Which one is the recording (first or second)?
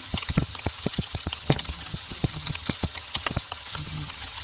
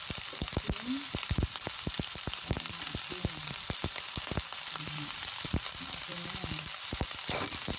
second